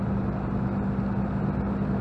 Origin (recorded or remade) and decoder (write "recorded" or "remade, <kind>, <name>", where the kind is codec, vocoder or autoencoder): recorded